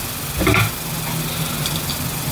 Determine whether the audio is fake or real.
real